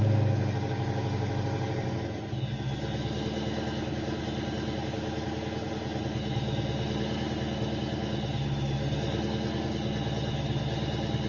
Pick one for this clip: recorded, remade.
recorded